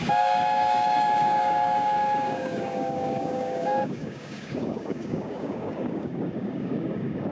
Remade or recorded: remade